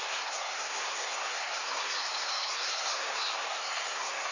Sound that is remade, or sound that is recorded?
remade